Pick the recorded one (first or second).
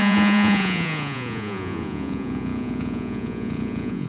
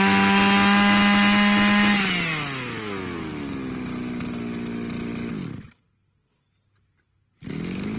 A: second